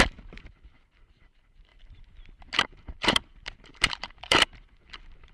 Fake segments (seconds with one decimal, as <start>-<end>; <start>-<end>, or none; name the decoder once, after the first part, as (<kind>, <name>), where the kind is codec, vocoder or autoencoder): 0.0-1.7 (vocoder, BigVGAN v2); 2.6-5.3